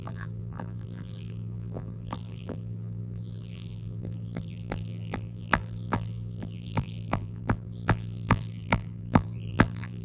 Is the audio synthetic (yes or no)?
yes